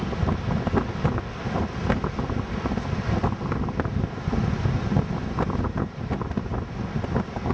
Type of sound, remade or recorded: recorded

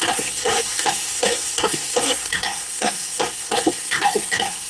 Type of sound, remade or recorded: remade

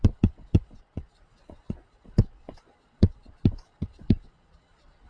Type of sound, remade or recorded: remade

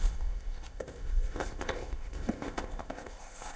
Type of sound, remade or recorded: remade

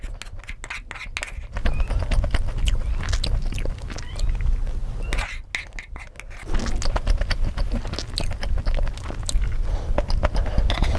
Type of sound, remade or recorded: recorded